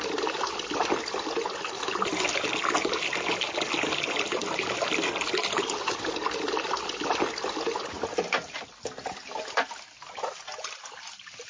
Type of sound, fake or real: real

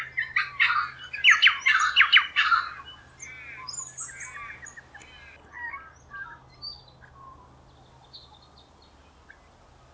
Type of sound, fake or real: real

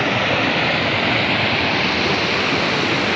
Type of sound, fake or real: real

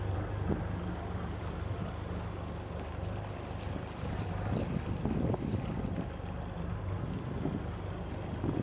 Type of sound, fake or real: real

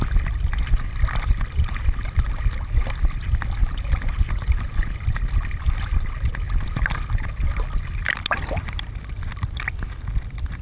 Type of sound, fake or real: real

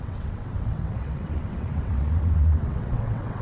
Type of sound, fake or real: fake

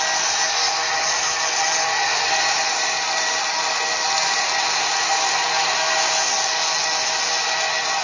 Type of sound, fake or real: real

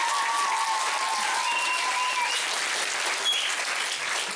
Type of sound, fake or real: real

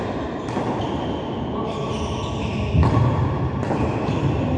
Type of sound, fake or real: real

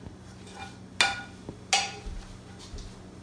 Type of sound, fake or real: real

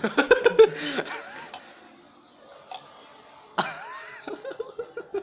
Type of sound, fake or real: real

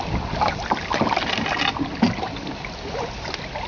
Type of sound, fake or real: real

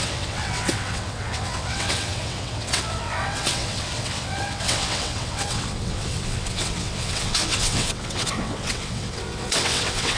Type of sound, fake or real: fake